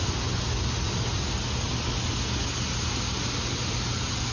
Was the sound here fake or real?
real